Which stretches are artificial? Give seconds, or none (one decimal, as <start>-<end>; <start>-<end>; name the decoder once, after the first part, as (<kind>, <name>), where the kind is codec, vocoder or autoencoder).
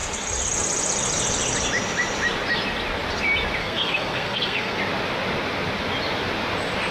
3.6-4.8 (codec, SNAC)